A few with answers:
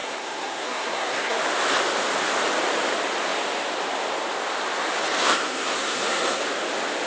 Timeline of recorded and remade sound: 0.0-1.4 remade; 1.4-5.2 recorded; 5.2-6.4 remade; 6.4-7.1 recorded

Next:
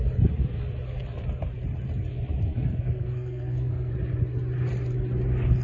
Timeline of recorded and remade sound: 0.0-2.5 recorded; 2.5-3.9 remade; 3.9-5.6 recorded

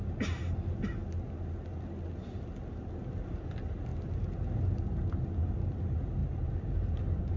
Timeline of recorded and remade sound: 0.0-7.4 recorded

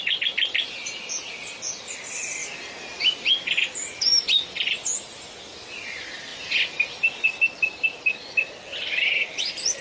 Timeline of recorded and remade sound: 0.0-2.4 remade; 2.4-3.3 recorded; 3.3-6.3 remade; 6.3-8.9 recorded; 8.9-9.8 remade

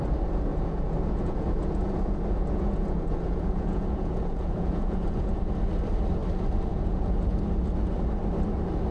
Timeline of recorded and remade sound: 0.0-0.5 recorded; 0.5-5.4 remade; 5.4-6.7 recorded; 6.7-7.4 remade; 7.4-8.9 recorded

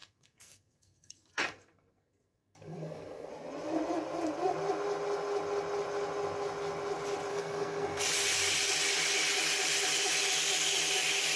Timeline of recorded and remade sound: 0.0-3.3 remade; 3.3-7.3 recorded; 7.3-8.0 remade; 8.0-11.4 recorded